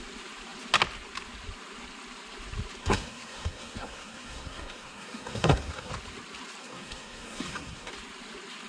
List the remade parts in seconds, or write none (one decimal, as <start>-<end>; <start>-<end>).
2.8-5.9; 6.6-7.9